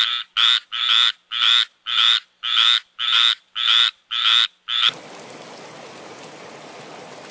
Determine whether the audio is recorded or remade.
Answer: recorded